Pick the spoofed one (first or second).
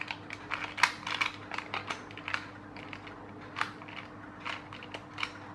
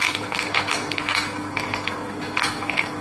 second